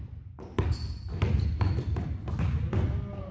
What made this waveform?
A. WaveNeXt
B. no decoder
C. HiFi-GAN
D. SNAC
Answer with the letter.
B